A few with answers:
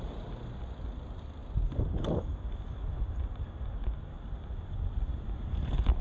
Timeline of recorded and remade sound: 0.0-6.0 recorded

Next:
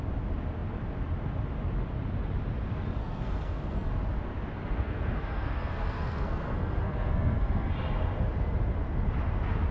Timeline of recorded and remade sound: 0.0-3.0 recorded; 3.0-3.9 remade; 3.9-4.6 recorded; 4.6-7.7 remade; 7.7-9.7 recorded

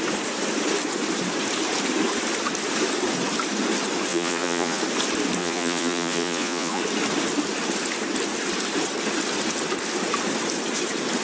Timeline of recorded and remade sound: 0.0-4.1 recorded; 4.1-4.8 remade; 4.8-5.4 recorded; 5.4-6.8 remade; 6.8-11.2 recorded

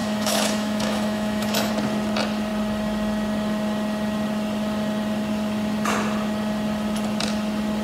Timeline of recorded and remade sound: 0.0-1.7 remade; 1.7-7.8 recorded